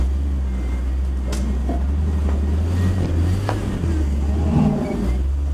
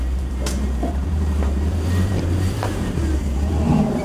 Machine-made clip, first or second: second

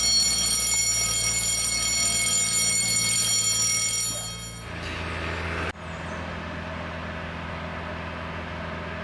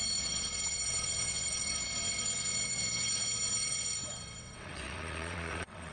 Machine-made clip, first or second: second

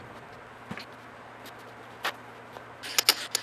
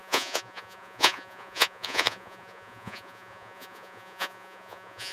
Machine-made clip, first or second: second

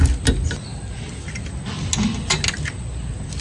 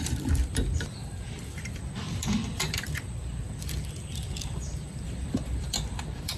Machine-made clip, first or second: second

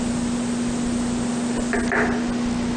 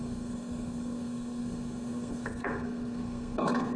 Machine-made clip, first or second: second